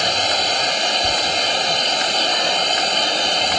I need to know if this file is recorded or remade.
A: recorded